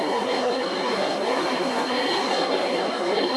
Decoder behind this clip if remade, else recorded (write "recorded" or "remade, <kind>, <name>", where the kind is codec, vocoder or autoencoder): remade, codec, SNAC